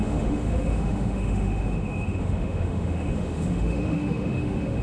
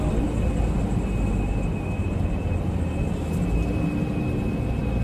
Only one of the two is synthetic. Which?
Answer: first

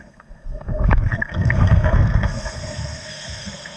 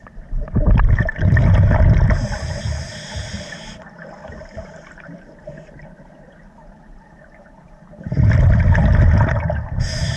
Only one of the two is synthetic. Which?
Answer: first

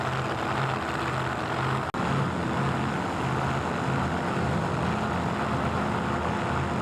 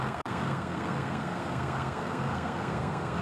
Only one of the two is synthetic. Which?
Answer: second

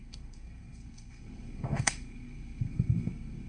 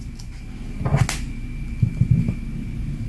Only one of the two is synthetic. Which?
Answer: first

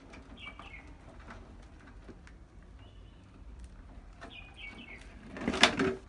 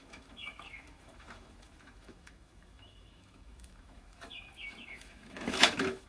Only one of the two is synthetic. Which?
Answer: second